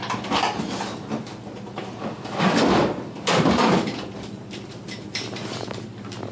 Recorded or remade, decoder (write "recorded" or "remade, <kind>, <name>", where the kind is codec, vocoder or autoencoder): remade, vocoder, BigVGAN v2